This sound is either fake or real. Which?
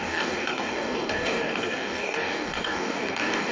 fake